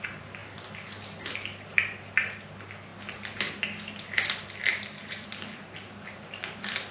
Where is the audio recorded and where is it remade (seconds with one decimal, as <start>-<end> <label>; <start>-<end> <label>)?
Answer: 0.0-6.9 recorded